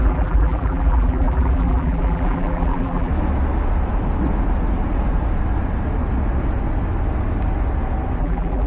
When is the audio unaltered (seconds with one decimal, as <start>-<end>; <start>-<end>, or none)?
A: 3.1-8.2